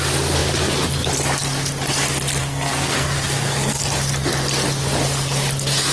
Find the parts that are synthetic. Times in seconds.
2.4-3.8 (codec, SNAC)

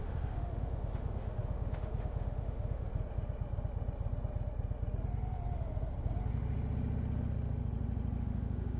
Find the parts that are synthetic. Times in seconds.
0.0-2.9 (autoencoder, DAC-VAE); 8.2-8.8